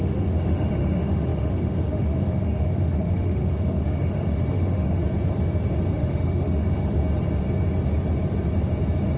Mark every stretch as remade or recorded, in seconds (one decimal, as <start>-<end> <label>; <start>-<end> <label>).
0.0-5.0 remade; 5.0-5.9 recorded; 5.9-7.0 remade; 7.0-9.2 recorded

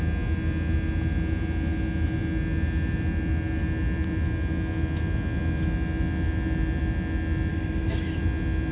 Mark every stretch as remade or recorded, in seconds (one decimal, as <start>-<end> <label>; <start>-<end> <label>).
0.0-7.5 recorded; 7.5-8.2 remade; 8.2-8.7 recorded